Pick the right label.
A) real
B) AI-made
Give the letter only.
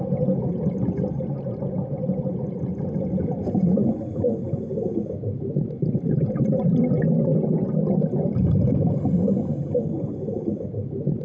A